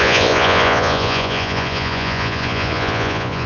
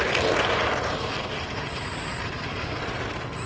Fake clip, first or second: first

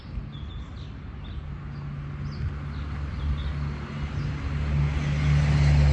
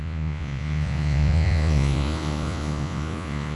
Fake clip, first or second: second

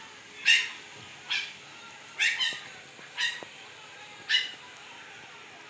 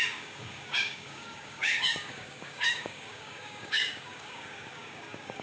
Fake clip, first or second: second